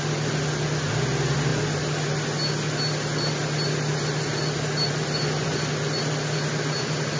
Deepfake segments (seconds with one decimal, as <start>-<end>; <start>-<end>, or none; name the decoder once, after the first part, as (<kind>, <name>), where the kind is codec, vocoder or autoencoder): none

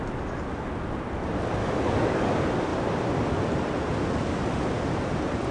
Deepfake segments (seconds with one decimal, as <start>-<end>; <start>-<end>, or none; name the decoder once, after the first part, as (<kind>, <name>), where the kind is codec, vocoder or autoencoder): 1.6-2.3 (codec, DAC)

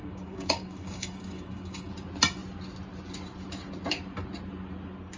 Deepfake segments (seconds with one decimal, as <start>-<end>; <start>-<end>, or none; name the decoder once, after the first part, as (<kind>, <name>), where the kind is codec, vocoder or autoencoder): 0.0-1.9 (codec, DAC)

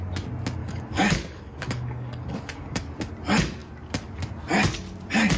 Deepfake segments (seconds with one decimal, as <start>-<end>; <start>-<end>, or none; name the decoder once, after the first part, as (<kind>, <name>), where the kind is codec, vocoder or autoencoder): 0.6-2.9 (codec, DAC)

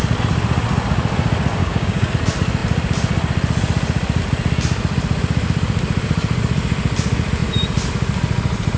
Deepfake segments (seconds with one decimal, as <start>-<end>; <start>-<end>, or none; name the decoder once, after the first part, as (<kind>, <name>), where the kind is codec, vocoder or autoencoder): 1.6-2.1 (codec, DAC)

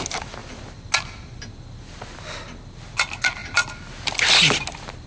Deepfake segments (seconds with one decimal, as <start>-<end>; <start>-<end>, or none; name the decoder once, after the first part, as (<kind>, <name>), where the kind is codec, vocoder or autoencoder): none

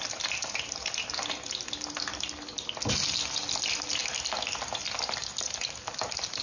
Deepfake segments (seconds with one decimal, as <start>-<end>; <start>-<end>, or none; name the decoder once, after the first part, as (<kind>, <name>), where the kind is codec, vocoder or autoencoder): none

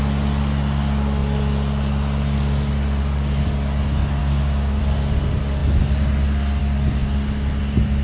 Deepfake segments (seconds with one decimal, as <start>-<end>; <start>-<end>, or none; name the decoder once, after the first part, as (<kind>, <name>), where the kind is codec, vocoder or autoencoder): 4.2-4.8 (codec, DAC)